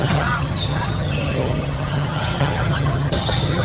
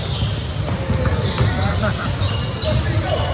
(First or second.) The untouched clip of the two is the second